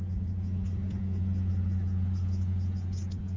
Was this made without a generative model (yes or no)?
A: yes